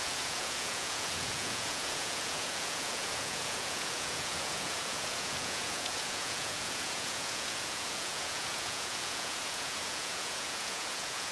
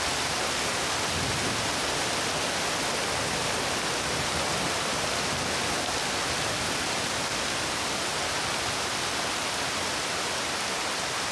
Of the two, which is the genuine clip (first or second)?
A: second